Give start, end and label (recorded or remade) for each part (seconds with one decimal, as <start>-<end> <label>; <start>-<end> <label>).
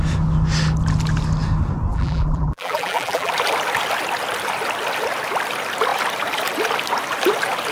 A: 0.0-1.9 recorded; 1.9-3.3 remade; 3.3-7.7 recorded